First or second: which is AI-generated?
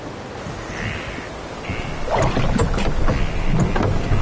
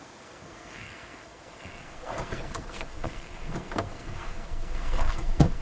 second